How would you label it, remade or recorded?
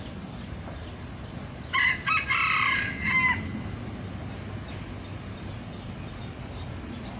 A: recorded